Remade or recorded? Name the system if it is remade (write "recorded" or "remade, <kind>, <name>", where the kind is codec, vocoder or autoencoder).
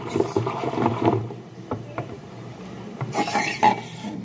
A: remade, vocoder, BigVGAN v2